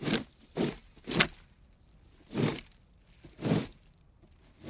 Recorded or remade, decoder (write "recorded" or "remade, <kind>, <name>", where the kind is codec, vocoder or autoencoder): recorded